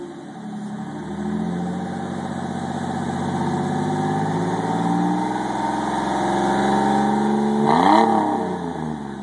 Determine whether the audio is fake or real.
real